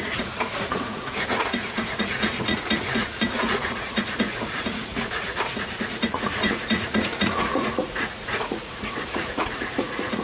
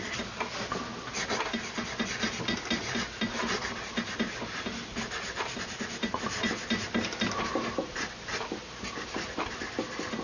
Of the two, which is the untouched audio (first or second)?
second